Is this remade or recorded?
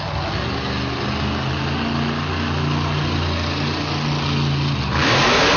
recorded